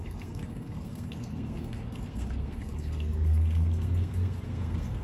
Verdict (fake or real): fake